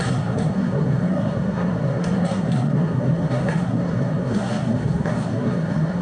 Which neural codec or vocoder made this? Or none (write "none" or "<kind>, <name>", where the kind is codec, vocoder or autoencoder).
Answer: codec, SNAC